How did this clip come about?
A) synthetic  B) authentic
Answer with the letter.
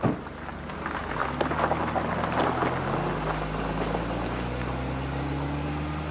B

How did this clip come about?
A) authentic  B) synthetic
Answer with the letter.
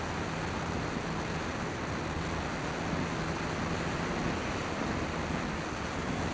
A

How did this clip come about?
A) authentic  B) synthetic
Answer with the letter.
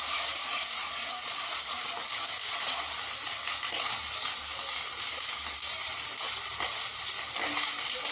A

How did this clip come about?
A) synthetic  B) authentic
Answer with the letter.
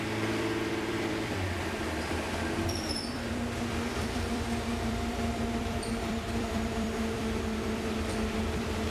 A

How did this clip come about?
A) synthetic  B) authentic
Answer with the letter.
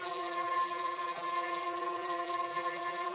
A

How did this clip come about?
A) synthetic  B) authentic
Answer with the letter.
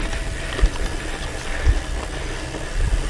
B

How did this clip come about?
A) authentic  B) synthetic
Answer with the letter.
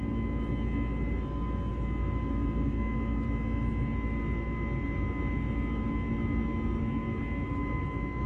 A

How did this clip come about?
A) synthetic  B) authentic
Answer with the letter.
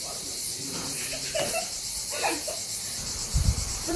A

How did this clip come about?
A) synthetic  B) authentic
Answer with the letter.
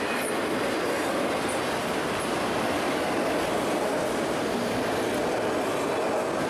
B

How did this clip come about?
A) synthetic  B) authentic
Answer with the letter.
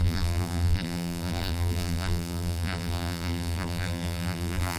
A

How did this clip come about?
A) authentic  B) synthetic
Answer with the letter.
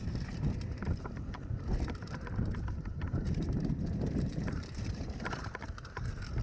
B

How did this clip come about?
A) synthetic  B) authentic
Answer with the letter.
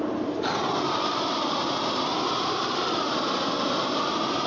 B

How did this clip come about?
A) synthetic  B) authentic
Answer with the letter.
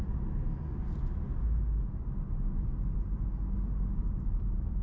B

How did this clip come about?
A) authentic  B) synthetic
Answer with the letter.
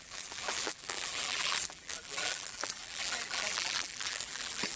B